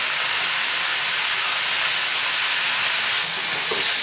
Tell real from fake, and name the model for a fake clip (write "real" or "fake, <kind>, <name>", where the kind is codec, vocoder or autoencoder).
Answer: real